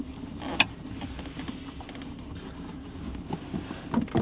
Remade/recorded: remade